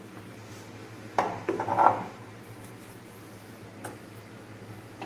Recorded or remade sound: recorded